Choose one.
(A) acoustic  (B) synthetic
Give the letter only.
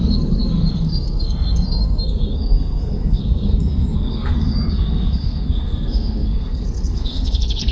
B